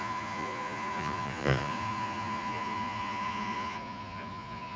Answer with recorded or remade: remade